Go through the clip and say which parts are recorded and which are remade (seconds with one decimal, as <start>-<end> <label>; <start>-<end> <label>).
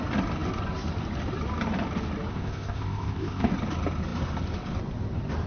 0.0-2.3 recorded; 2.3-3.5 remade; 3.5-5.5 recorded